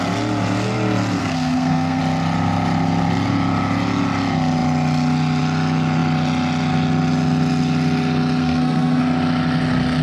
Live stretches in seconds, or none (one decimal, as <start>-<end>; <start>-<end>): 0.0-1.2; 2.0-8.4; 9.0-10.0